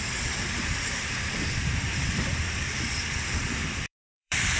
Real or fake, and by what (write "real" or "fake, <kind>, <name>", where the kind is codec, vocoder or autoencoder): fake, vocoder, BigVGAN v2